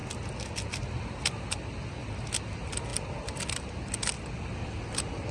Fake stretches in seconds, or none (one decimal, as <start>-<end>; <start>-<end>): none